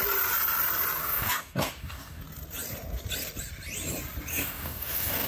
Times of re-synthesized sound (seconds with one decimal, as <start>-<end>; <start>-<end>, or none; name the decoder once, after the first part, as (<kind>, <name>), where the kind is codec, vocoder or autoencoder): 1.0-2.2 (codec, DAC); 4.3-5.3